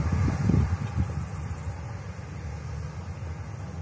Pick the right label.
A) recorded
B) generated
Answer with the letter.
A